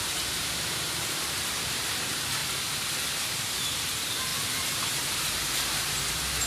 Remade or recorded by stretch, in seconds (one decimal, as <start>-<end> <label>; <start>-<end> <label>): 0.0-2.4 remade; 2.4-3.2 recorded; 3.2-6.5 remade